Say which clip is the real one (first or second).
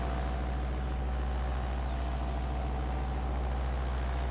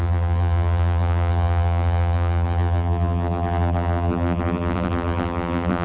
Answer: first